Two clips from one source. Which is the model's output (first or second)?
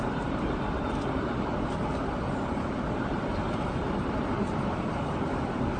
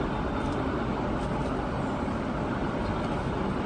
first